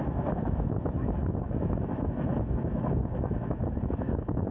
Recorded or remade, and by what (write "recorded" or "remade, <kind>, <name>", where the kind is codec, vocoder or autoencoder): remade, autoencoder, DAC-VAE